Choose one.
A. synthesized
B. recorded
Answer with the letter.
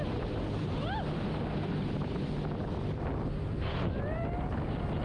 B